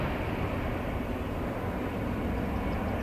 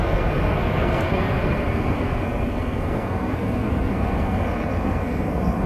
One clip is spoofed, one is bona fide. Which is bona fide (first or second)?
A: first